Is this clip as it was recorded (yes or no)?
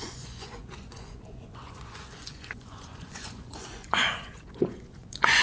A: no